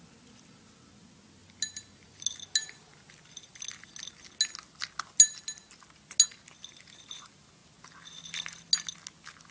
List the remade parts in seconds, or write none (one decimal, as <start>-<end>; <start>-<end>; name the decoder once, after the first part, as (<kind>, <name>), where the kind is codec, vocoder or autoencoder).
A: none